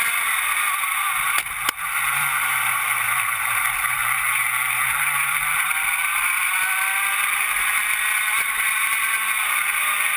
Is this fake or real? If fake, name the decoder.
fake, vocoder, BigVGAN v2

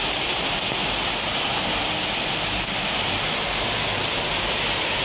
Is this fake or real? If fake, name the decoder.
real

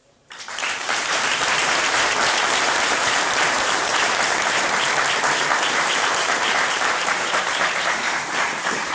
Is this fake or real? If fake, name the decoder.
fake, vocoder, BigVGAN v2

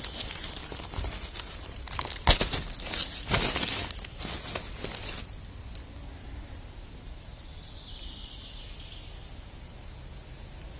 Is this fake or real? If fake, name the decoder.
real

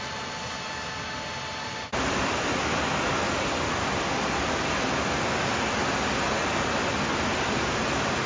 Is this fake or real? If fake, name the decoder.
real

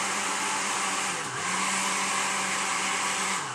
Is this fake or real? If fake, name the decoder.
fake, vocoder, BigVGAN v2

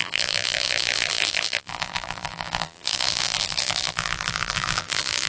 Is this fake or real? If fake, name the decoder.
fake, vocoder, BigVGAN v2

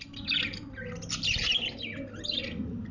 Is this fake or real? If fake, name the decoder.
real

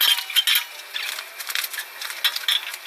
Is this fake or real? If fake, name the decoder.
real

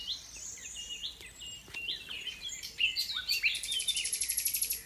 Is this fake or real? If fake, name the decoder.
fake, vocoder, BigVGAN v2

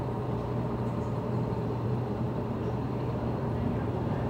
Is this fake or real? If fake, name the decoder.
fake, vocoder, BigVGAN v2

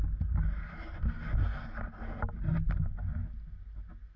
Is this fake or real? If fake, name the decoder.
real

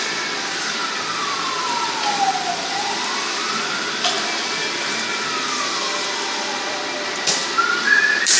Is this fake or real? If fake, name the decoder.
fake, vocoder, BigVGAN v2